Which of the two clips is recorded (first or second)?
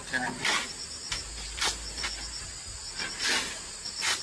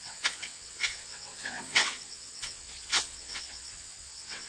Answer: first